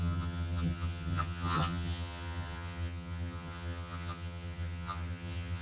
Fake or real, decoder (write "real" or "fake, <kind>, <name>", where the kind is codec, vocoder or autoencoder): fake, vocoder, HiFi-GAN